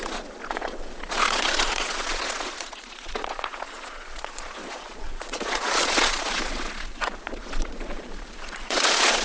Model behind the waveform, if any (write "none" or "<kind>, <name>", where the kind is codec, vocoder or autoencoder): vocoder, Vocos